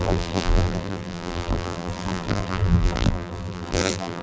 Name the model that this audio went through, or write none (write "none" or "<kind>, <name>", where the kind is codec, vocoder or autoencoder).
vocoder, BigVGAN v2